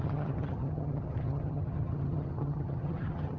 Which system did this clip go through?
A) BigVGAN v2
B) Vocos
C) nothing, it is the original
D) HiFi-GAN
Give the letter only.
D